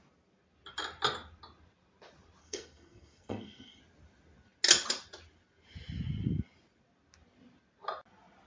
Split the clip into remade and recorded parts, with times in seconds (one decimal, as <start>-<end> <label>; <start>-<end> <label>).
0.0-2.4 recorded; 2.4-3.8 remade; 3.8-8.5 recorded